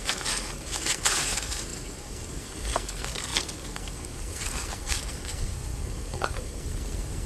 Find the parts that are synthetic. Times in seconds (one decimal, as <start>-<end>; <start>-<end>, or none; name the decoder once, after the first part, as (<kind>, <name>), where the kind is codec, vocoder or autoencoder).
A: 0.0-7.3 (codec, SNAC)